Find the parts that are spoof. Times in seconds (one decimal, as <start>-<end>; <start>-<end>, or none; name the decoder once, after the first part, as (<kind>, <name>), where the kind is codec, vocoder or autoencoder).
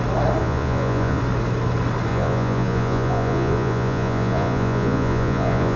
0.4-1.2 (vocoder, Vocos); 2.1-5.8